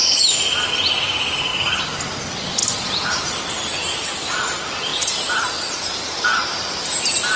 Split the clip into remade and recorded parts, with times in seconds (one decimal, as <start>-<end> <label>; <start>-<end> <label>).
0.0-4.9 recorded; 4.9-7.4 remade